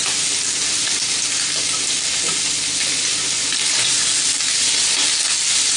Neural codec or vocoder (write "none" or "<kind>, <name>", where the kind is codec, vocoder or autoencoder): none